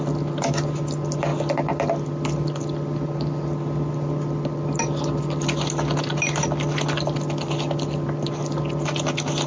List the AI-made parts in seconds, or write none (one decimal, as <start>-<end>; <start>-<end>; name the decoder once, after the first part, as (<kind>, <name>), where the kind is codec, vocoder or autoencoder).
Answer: none